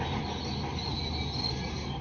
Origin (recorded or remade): recorded